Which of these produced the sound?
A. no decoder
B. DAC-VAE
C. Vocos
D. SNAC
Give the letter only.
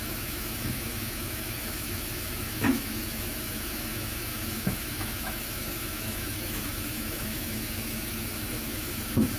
B